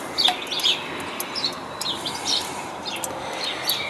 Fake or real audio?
real